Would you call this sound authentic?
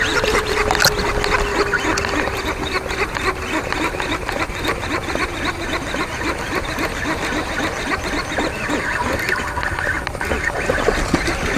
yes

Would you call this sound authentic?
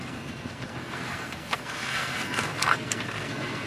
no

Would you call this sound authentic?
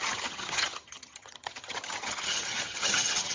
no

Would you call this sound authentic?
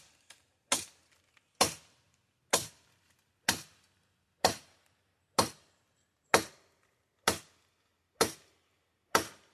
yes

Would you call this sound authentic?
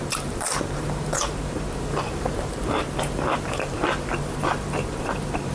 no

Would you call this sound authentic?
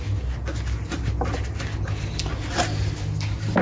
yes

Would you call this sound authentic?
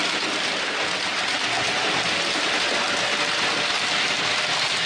yes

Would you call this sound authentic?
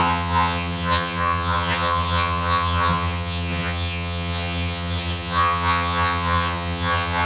no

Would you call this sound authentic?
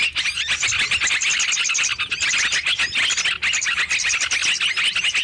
yes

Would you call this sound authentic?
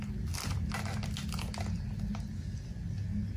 yes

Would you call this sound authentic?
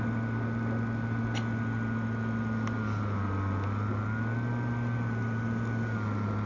yes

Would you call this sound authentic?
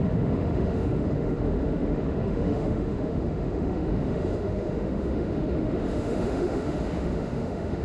no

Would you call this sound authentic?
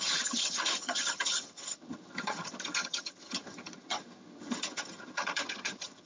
no